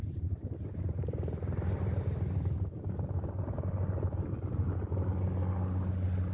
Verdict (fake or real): real